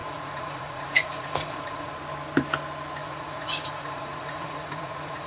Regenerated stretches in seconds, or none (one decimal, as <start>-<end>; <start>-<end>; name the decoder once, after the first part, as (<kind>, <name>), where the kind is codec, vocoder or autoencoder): 0.0-1.9 (vocoder, Vocos); 3.0-5.3